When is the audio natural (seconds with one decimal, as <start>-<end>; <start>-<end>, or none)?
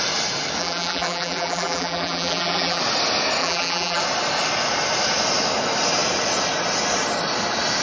0.0-0.6; 2.8-3.4; 4.0-7.8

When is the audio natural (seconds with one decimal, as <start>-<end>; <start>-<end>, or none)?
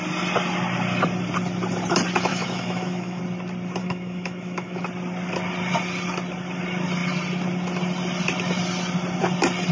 0.0-2.3; 3.2-3.8; 4.8-9.7